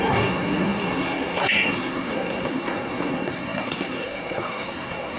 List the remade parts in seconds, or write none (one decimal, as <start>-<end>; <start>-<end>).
0.0-5.2